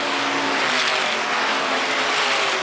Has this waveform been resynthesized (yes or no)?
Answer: no